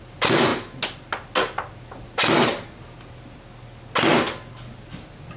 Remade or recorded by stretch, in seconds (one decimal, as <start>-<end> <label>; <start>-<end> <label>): 0.0-5.4 recorded

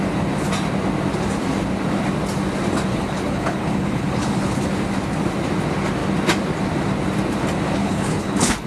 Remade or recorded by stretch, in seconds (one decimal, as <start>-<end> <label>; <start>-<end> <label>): 0.0-2.9 recorded; 2.9-4.6 remade; 4.6-7.8 recorded; 7.8-8.7 remade

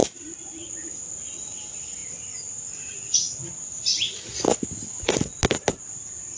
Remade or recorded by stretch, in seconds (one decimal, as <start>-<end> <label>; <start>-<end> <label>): 0.0-0.7 remade; 0.7-6.4 recorded